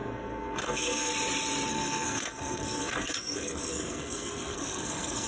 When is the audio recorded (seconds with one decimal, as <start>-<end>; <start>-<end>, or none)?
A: 1.1-1.7

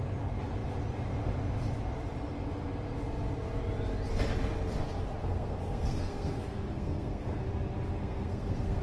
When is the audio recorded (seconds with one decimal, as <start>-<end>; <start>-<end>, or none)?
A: 0.0-5.2; 7.4-8.0